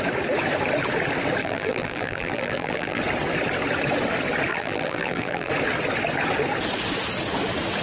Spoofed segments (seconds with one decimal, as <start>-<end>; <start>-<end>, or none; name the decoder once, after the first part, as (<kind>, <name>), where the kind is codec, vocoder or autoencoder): 1.4-3.0 (vocoder, BigVGAN v2); 4.5-5.5